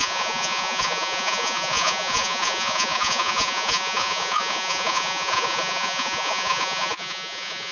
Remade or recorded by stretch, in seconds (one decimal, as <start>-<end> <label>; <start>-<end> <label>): 0.0-7.7 remade